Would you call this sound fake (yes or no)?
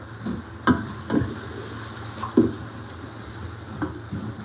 no